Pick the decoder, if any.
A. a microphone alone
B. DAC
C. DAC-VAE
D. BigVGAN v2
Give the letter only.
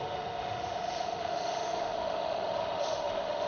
C